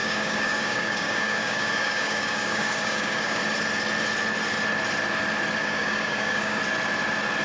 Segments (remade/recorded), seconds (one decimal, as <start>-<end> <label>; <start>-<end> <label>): 0.0-3.4 remade; 3.4-5.6 recorded; 5.6-6.6 remade; 6.6-7.4 recorded